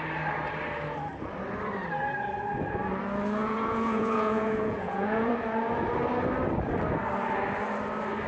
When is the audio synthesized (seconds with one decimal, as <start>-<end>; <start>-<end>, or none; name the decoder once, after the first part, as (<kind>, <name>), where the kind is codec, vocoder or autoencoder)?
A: 3.4-5.3 (vocoder, Vocos)